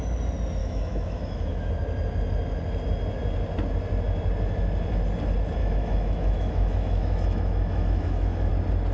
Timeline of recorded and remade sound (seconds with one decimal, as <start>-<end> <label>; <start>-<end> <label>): 0.0-0.6 recorded; 0.6-1.7 remade; 1.7-5.6 recorded; 5.6-8.5 remade; 8.5-8.9 recorded